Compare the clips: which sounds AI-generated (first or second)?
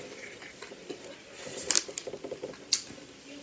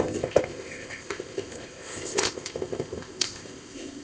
second